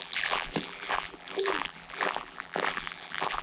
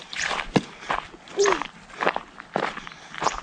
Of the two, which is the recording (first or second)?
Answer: second